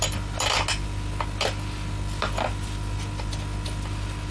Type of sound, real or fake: real